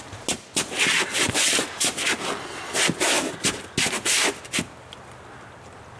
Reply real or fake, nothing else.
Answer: real